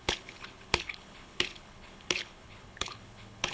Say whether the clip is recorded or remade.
remade